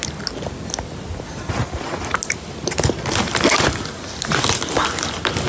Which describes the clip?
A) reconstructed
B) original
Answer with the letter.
B